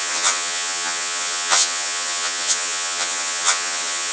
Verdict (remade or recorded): remade